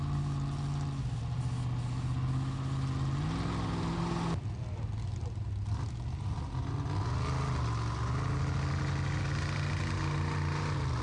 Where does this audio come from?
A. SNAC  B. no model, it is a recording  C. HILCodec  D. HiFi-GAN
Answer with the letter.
B